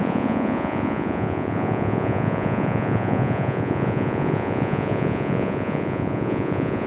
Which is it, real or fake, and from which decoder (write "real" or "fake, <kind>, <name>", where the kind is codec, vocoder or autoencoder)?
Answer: fake, vocoder, Vocos